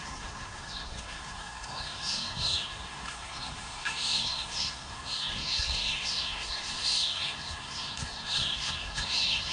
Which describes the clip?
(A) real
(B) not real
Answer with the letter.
B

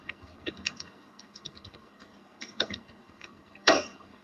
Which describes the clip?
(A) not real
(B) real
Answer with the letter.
A